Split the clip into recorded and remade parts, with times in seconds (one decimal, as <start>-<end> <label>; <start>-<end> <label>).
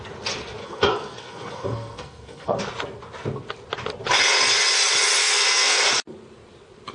0.0-0.6 recorded; 0.6-2.6 remade; 2.6-5.2 recorded; 5.2-5.8 remade; 5.8-6.9 recorded